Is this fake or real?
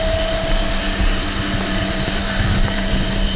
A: real